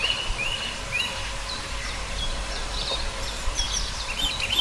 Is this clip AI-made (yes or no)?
yes